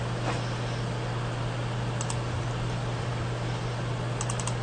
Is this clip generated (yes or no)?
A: no